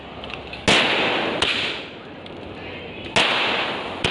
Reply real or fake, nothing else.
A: real